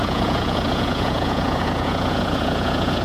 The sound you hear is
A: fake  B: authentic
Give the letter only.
A